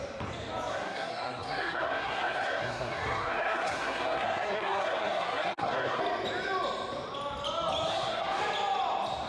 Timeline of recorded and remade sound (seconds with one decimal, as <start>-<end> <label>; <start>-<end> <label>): 0.0-0.7 recorded; 0.7-6.0 remade; 6.0-7.9 recorded; 7.9-8.4 remade; 8.4-9.3 recorded

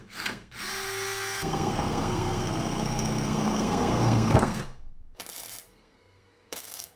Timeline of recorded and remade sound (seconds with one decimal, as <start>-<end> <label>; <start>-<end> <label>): 0.0-5.2 remade; 5.2-5.7 recorded; 5.7-7.0 remade

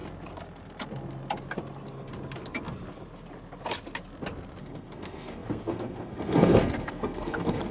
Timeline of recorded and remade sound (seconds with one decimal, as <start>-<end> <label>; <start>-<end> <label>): 0.0-4.6 recorded; 4.6-7.7 remade